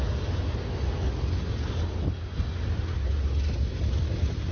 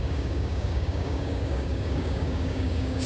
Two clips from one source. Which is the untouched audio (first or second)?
first